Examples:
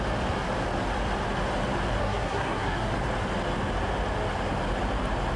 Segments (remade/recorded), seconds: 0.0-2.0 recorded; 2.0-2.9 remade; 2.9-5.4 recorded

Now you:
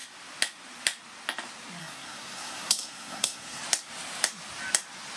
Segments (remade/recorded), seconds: 0.0-1.8 recorded; 1.8-3.6 remade; 3.6-5.2 recorded

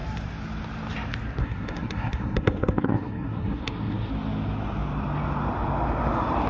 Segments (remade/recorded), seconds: 0.0-1.4 recorded; 1.4-4.1 remade; 4.1-6.5 recorded

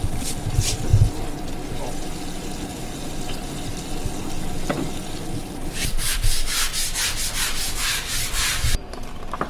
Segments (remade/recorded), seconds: 0.0-9.5 recorded